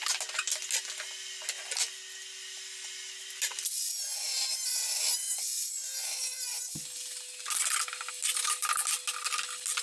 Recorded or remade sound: recorded